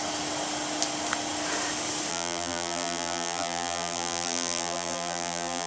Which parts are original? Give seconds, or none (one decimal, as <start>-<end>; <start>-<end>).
0.0-2.1